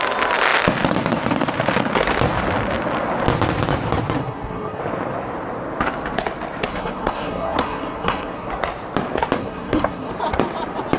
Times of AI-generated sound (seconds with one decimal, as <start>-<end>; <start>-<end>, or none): 4.2-4.8; 6.7-8.5; 9.4-10.1